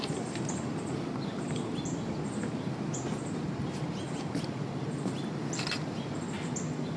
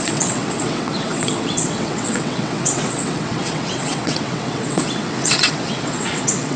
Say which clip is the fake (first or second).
second